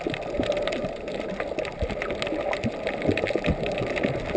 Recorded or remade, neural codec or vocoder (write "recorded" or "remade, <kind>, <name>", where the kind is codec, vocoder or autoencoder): recorded